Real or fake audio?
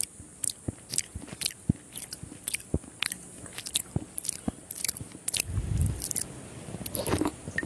real